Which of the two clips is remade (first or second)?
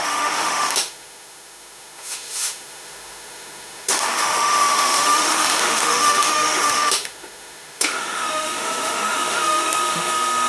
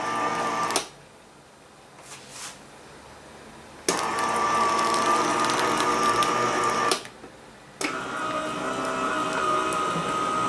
first